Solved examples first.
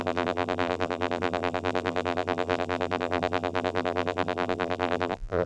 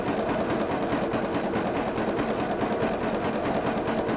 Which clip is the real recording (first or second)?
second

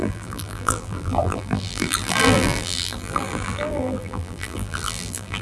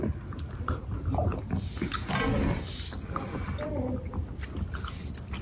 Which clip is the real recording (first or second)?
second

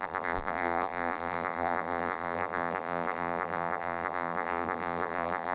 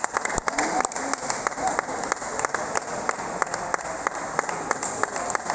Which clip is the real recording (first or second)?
second